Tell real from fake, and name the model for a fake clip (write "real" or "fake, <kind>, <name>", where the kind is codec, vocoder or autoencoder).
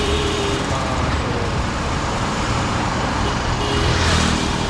fake, vocoder, BigVGAN v2